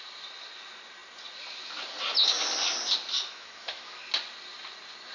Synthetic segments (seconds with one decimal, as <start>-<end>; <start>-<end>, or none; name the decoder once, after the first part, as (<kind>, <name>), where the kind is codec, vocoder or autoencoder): 3.3-4.0 (autoencoder, DAC-VAE)